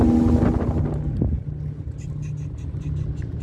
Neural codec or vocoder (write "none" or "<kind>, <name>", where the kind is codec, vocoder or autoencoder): none